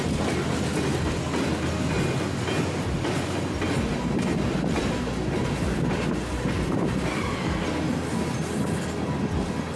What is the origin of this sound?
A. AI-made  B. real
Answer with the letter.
B